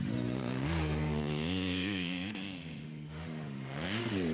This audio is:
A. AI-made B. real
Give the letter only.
A